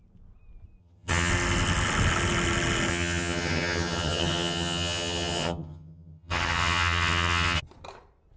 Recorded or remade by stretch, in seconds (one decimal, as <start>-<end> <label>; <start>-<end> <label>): 0.0-0.8 recorded; 0.8-1.3 remade; 1.3-2.9 recorded; 2.9-7.6 remade; 7.6-8.4 recorded